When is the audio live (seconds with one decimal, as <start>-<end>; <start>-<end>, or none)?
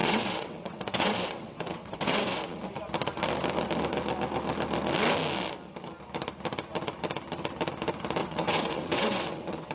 2.6-8.2